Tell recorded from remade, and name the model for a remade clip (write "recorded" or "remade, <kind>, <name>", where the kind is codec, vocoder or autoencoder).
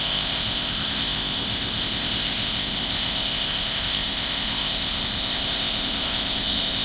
remade, codec, ZipCodec